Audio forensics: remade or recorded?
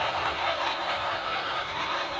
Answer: remade